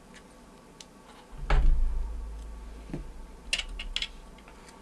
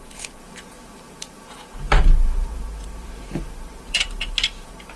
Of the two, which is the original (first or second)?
first